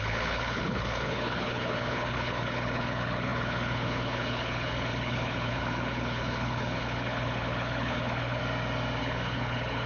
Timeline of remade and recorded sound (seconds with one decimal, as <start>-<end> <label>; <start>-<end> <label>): 0.0-8.4 remade; 8.4-9.0 recorded; 9.0-9.9 remade